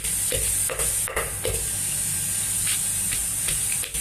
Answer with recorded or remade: recorded